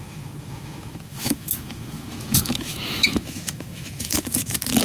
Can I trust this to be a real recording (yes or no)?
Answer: no